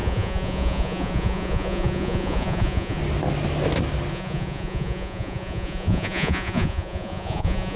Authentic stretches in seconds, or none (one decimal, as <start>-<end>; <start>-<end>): 3.0-4.1